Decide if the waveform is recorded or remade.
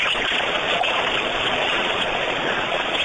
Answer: remade